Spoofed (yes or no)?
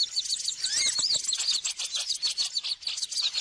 no